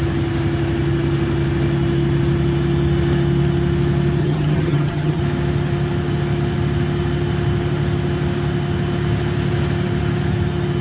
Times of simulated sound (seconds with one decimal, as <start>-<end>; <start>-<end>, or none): 4.2-5.2